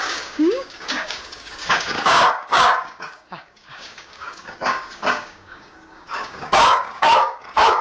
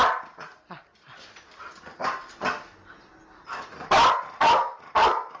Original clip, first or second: second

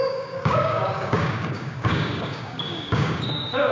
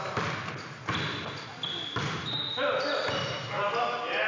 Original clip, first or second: second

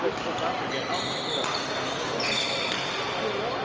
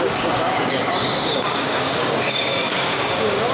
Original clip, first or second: first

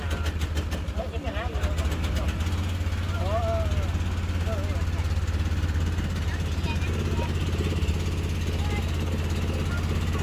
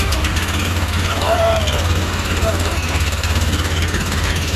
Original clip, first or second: first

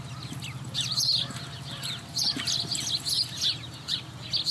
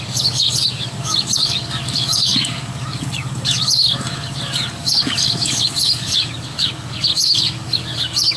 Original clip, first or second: first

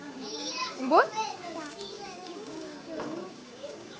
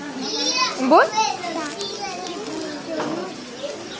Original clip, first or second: second